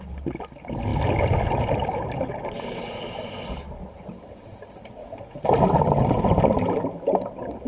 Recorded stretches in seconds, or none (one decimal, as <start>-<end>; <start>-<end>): 0.0-7.7